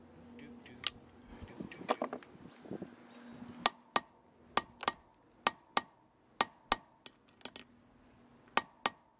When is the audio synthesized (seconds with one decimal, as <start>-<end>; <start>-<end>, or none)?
1.3-1.9